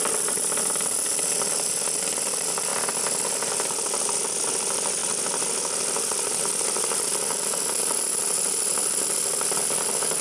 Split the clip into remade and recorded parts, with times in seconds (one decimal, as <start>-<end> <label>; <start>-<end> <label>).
0.0-10.2 recorded